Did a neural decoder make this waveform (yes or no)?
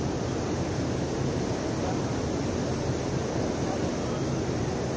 no